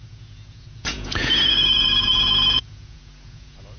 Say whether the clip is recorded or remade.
remade